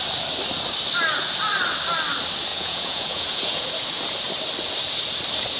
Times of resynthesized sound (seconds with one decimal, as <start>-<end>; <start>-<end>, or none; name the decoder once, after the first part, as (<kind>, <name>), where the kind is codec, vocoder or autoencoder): 2.5-3.7 (vocoder, Vocos)